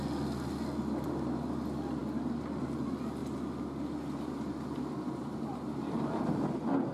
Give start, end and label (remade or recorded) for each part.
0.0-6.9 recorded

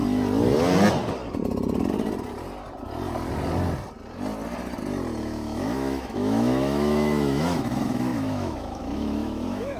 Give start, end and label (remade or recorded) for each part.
0.0-5.2 recorded; 5.2-9.8 remade

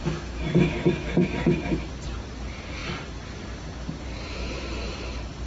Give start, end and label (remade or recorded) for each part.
0.0-1.9 remade; 1.9-5.5 recorded

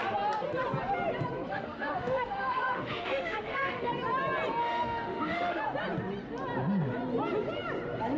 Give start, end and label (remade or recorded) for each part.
0.0-1.5 recorded; 1.5-3.9 remade; 3.9-4.6 recorded; 4.6-5.6 remade; 5.6-8.2 recorded

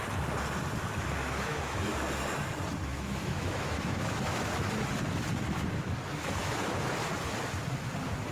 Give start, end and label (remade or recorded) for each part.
0.0-1.2 recorded; 1.2-1.9 remade; 1.9-2.9 recorded; 2.9-4.7 remade; 4.7-6.4 recorded; 6.4-6.9 remade; 6.9-8.3 recorded